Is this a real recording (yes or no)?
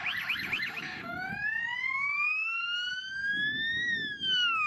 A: no